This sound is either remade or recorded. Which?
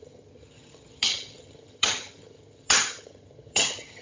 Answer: remade